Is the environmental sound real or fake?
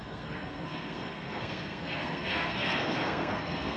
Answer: fake